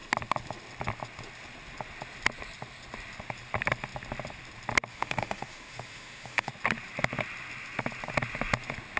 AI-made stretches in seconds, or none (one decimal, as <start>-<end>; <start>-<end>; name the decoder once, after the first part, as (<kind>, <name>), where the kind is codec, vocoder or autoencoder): 4.9-6.5 (autoencoder, DAC-VAE)